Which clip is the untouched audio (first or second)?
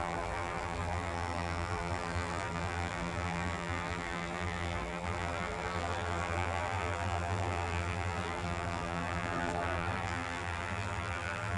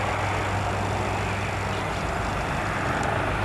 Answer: second